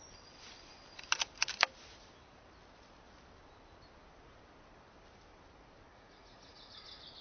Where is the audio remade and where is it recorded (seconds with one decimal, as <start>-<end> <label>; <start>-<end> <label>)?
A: 0.0-5.9 recorded; 5.9-6.8 remade; 6.8-7.2 recorded